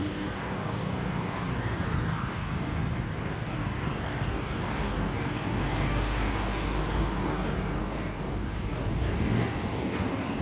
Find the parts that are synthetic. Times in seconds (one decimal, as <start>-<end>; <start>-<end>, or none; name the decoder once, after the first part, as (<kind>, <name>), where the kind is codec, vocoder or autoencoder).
0.0-10.4 (codec, DAC)